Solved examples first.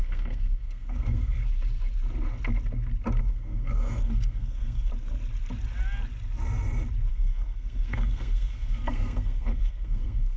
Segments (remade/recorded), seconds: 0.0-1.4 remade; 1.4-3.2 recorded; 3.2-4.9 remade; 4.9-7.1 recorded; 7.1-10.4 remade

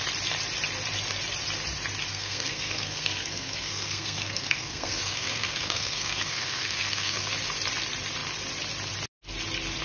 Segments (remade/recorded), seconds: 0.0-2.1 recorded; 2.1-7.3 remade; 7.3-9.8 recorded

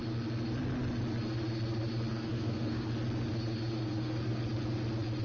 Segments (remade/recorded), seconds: 0.0-2.1 recorded; 2.1-2.9 remade; 2.9-3.8 recorded; 3.8-4.4 remade; 4.4-5.2 recorded

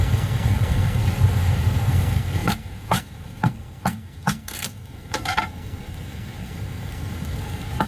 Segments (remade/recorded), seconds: 0.0-7.9 remade

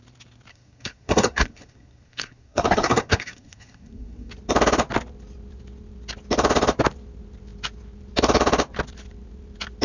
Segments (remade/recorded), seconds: 0.0-0.5 recorded; 0.5-4.3 remade; 4.3-9.8 recorded